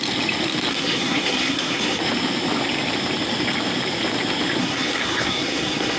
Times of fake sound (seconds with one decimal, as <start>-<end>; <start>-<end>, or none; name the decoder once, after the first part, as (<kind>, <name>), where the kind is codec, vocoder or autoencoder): 0.7-2.0 (codec, SNAC); 4.6-6.0

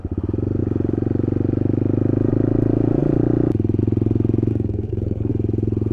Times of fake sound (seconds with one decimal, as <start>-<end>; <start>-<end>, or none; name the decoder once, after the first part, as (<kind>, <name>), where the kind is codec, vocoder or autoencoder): 4.5-5.3 (codec, SNAC)

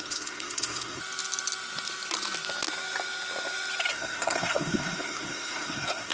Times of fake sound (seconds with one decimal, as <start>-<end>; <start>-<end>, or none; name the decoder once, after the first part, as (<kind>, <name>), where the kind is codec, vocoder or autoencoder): 0.0-1.0 (codec, SNAC); 3.9-6.1

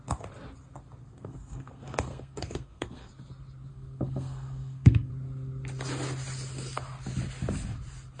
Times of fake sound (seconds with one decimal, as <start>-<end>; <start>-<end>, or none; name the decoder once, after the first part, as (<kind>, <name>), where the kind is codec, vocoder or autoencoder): 1.0-3.1 (codec, SNAC); 3.7-5.1

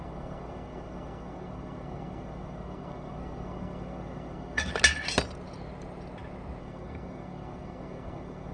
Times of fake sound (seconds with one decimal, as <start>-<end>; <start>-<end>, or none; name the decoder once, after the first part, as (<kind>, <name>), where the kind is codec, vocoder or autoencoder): 0.0-4.7 (codec, SNAC); 6.6-8.5

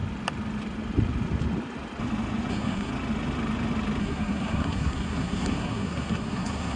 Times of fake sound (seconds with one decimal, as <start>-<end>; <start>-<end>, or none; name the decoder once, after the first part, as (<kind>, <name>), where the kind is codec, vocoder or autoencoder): 2.5-2.9 (codec, SNAC); 4.0-6.8

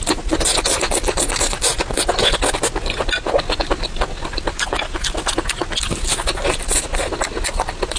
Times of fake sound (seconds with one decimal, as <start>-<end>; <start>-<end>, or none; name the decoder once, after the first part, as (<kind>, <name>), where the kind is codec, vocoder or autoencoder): none